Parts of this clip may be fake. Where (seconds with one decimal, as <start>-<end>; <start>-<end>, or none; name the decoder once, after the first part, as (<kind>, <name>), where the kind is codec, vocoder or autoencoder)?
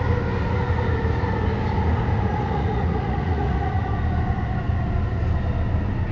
2.3-3.7 (vocoder, Vocos)